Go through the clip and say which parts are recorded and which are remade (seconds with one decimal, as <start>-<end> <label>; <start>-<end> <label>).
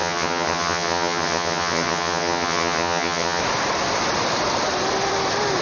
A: 0.0-3.4 remade; 3.4-5.6 recorded